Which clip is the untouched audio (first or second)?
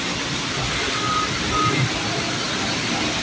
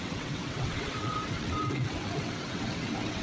first